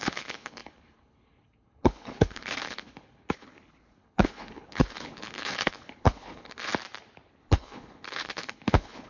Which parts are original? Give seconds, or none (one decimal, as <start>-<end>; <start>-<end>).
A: 6.7-7.3